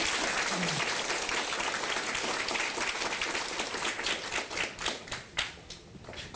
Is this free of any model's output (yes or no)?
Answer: yes